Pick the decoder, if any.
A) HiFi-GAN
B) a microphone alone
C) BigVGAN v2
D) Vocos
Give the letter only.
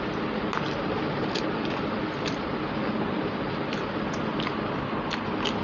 B